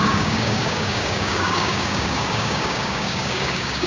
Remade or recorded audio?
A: remade